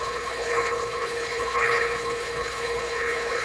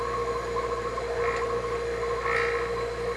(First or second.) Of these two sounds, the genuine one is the second